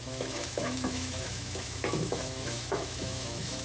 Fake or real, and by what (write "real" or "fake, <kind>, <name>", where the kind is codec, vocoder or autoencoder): fake, autoencoder, DAC-VAE